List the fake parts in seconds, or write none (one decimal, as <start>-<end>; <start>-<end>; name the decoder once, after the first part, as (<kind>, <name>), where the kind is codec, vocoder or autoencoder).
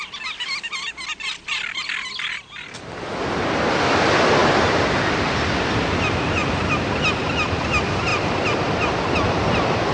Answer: 6.4-7.0 (vocoder, BigVGAN v2); 8.1-8.9